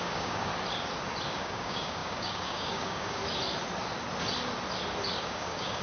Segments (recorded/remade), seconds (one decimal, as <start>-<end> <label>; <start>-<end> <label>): 0.0-0.5 remade; 0.5-1.3 recorded; 1.3-3.2 remade; 3.2-5.2 recorded; 5.2-5.8 remade